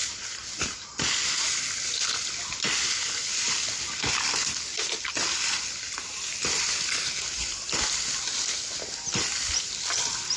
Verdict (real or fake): real